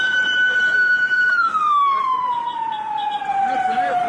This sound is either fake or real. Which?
fake